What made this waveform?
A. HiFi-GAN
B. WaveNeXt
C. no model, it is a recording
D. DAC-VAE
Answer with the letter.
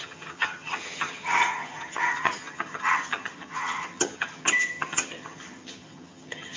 A